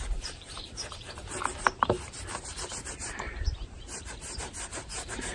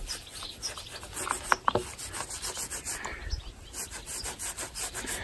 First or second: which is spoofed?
first